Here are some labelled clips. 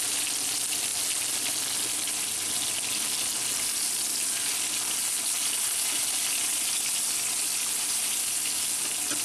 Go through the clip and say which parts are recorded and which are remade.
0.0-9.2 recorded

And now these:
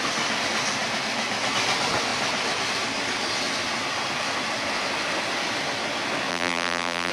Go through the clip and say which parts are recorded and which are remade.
0.0-6.3 recorded; 6.3-7.1 remade

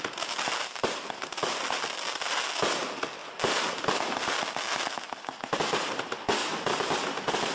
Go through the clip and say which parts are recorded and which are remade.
0.0-3.2 recorded; 3.2-5.9 remade; 5.9-6.4 recorded; 6.4-7.0 remade; 7.0-7.5 recorded

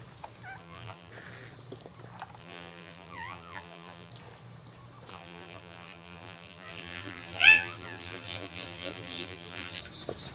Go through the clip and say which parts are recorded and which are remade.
0.0-0.6 recorded; 0.6-1.1 remade; 1.1-2.4 recorded; 2.4-4.1 remade; 4.1-5.1 recorded; 5.1-9.8 remade; 9.8-10.3 recorded

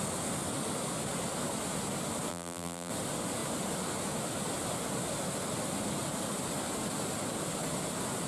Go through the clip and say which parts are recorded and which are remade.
0.0-2.3 recorded; 2.3-2.9 remade; 2.9-8.3 recorded

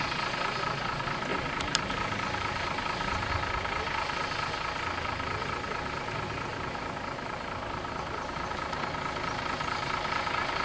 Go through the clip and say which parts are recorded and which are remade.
0.0-1.3 recorded; 1.3-3.3 remade; 3.3-6.5 recorded; 6.5-8.8 remade; 8.8-10.6 recorded

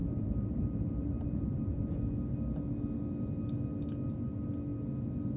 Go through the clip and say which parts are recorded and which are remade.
0.0-2.0 remade; 2.0-5.4 recorded